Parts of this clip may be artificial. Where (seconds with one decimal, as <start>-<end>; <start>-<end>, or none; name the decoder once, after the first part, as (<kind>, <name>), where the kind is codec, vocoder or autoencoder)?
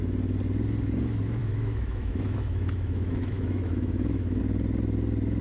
1.4-4.4 (autoencoder, DAC-VAE)